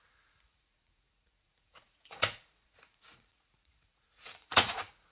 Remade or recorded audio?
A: remade